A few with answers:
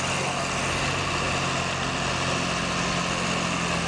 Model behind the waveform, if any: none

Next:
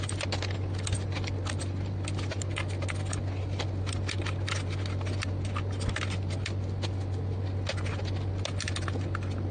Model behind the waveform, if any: none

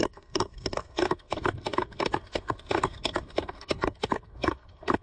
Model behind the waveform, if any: codec, SNAC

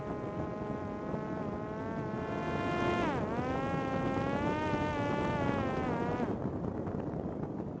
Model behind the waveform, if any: none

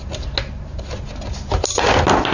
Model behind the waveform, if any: none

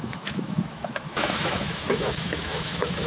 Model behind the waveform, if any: autoencoder, DAC-VAE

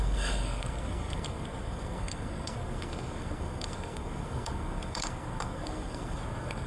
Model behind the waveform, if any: codec, SNAC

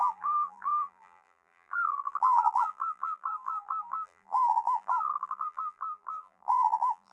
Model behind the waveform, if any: vocoder, BigVGAN v2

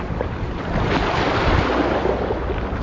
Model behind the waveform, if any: none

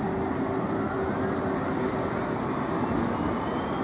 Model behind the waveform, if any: none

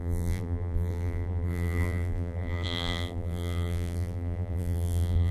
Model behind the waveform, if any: vocoder, BigVGAN v2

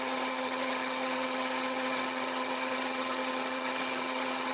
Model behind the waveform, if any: vocoder, HiFi-GAN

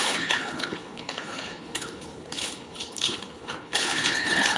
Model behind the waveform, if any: codec, HILCodec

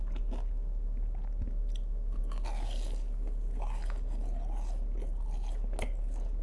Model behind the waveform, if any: none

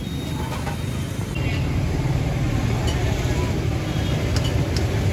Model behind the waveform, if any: none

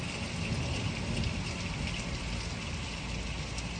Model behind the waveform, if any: none